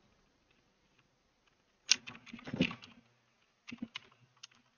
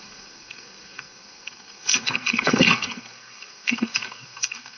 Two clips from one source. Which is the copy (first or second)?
second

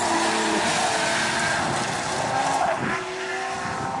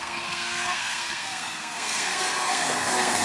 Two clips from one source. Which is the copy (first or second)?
second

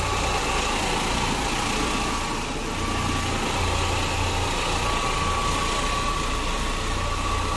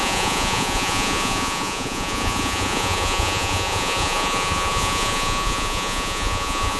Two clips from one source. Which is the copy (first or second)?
second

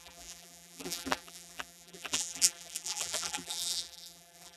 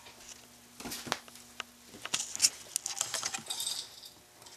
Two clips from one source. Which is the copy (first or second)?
first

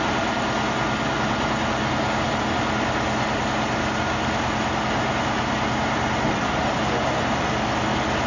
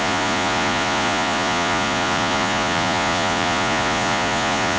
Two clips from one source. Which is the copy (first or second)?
second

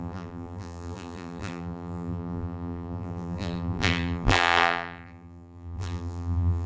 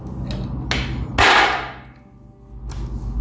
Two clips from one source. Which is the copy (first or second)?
first